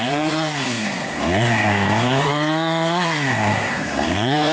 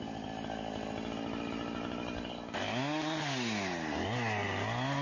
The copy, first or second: first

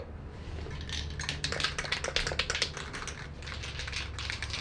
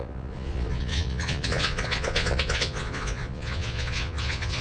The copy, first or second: second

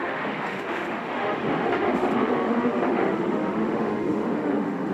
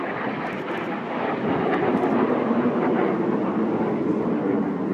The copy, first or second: first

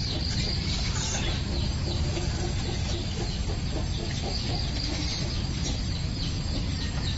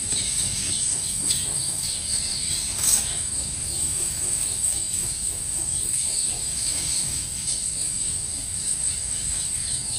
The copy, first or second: second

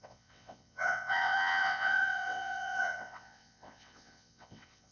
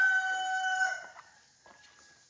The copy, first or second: first